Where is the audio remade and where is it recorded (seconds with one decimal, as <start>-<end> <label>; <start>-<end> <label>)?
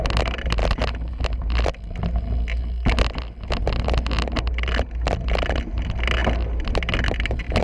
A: 0.0-7.6 recorded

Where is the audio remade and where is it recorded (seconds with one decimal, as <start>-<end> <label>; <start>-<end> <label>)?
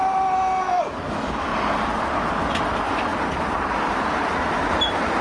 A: 0.0-3.1 recorded; 3.1-5.2 remade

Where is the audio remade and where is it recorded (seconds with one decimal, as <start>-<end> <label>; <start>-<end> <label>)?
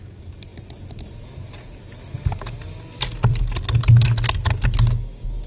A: 0.0-5.5 recorded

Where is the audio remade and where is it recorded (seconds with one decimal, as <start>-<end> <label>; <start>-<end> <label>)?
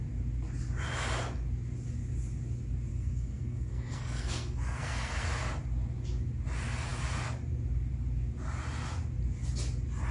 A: 0.0-2.9 recorded; 2.9-5.3 remade; 5.3-10.1 recorded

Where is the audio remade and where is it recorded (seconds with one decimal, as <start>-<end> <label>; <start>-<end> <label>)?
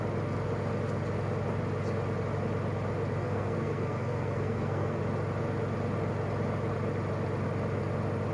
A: 0.0-3.2 recorded; 3.2-5.0 remade; 5.0-8.3 recorded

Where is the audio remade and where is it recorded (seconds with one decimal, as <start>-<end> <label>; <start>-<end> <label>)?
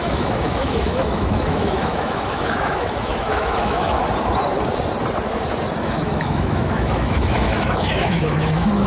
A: 0.0-4.0 remade; 4.0-5.8 recorded; 5.8-8.9 remade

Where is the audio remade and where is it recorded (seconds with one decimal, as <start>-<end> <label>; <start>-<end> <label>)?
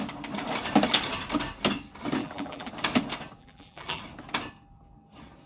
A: 0.0-2.2 recorded; 2.2-2.7 remade; 2.7-3.4 recorded; 3.4-4.0 remade; 4.0-5.5 recorded